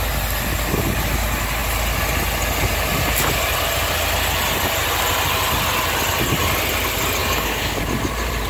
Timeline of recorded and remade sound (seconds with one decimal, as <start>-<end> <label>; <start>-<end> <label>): 0.0-7.2 recorded; 7.2-7.8 remade; 7.8-8.5 recorded